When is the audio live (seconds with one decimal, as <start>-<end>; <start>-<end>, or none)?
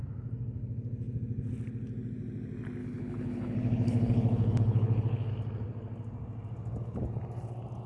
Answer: 0.0-2.8; 5.3-7.9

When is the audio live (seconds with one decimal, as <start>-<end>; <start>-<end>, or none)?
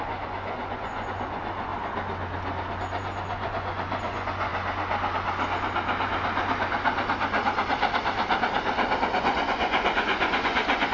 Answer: 1.7-2.8; 4.5-9.2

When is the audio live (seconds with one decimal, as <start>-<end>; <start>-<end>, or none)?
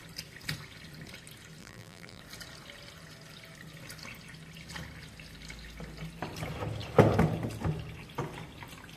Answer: 0.0-1.6; 2.2-9.0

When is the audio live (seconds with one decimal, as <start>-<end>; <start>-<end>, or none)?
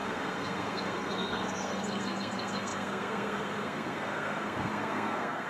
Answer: none